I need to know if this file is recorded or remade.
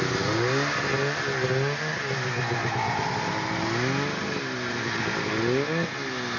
recorded